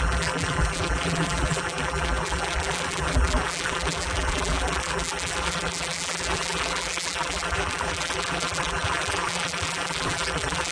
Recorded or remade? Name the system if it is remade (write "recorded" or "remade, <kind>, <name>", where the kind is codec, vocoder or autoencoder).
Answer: remade, vocoder, BigVGAN v2